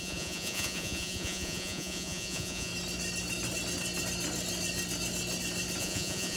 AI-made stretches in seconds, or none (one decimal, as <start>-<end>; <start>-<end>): 0.0-2.7; 5.8-6.4